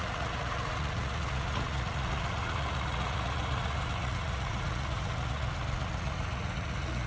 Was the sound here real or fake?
fake